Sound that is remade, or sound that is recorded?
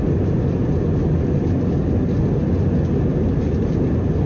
recorded